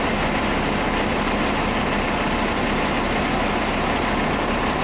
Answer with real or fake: real